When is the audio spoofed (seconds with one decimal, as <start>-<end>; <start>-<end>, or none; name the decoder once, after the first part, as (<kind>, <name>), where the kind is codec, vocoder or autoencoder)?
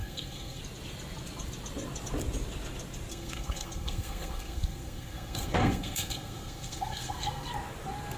0.0-0.6 (codec, SNAC); 3.1-7.5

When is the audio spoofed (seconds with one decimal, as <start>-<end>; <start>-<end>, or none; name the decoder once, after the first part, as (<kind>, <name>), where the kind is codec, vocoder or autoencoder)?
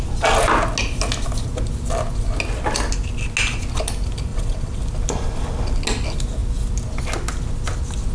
4.3-4.8 (vocoder, WaveNeXt)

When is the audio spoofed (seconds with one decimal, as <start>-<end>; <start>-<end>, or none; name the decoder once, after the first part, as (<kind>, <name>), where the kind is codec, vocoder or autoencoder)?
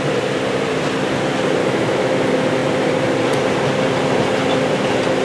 1.6-2.1 (autoencoder, DAC-VAE)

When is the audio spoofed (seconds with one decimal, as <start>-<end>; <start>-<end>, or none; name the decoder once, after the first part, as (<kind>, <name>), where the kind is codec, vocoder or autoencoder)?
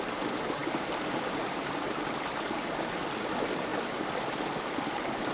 0.6-3.0 (vocoder, BigVGAN v2)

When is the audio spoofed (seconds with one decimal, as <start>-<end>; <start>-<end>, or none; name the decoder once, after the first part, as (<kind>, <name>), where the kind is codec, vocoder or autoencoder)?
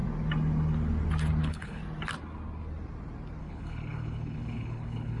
1.4-1.8 (codec, HILCodec); 3.4-5.2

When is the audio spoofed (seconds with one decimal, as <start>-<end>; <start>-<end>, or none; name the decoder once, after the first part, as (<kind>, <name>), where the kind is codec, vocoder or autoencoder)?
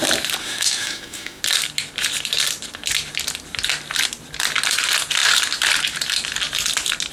0.4-1.4 (autoencoder, DAC-VAE)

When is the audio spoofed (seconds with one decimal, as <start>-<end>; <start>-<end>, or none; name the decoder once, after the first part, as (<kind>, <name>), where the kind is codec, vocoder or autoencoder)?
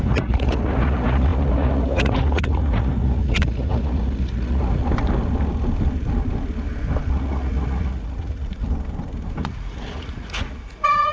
0.0-4.8 (vocoder, Vocos); 7.1-8.6; 9.4-11.1